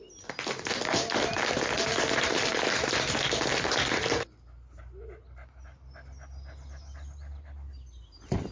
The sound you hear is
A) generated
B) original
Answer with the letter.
B